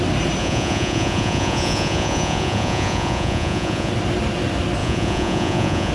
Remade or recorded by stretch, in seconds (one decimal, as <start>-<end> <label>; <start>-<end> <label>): 0.0-0.4 recorded; 0.4-3.9 remade; 3.9-4.8 recorded; 4.8-5.9 remade